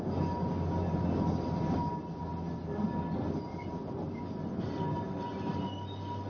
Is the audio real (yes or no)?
yes